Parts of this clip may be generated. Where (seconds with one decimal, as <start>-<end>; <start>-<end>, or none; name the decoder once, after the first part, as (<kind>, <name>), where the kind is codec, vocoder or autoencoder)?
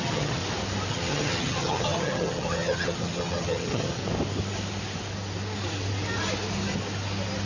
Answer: 0.0-0.4 (vocoder, HiFi-GAN); 0.9-4.0